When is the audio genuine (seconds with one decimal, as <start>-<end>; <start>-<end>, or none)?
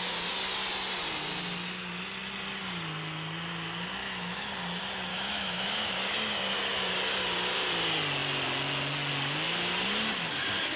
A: 0.0-4.0; 4.5-5.1; 5.9-10.8